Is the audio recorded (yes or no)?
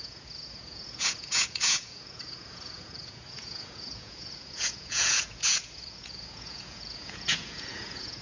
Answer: no